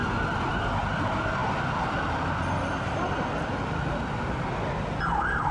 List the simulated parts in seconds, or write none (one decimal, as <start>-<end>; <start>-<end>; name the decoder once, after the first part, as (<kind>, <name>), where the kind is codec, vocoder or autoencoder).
none